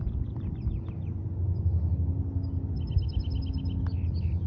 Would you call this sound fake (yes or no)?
no